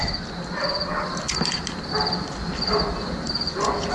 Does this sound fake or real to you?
real